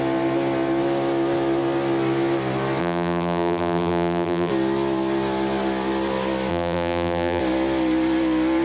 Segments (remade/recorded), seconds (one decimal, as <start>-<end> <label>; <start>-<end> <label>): 0.0-2.8 recorded; 2.8-4.5 remade; 4.5-6.5 recorded; 6.5-7.4 remade; 7.4-8.6 recorded